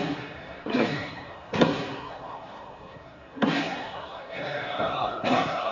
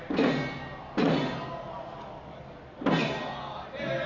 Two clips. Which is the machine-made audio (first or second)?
first